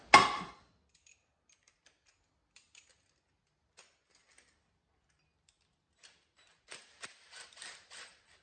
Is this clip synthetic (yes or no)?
no